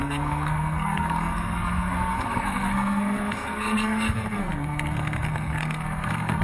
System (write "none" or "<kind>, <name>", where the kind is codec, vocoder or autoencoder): codec, SNAC